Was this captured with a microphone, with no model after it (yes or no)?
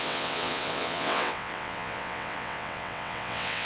no